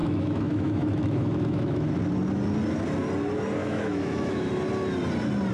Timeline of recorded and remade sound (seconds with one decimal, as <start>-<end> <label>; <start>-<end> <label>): 0.0-1.9 remade; 1.9-3.6 recorded; 3.6-4.5 remade; 4.5-5.5 recorded